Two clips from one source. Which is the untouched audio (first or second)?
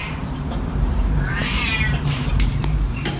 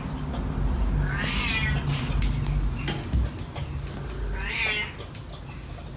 second